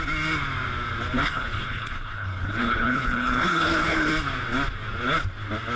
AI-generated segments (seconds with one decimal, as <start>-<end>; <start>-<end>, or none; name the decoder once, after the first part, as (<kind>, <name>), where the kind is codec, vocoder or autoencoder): 1.2-4.1 (codec, HILCodec)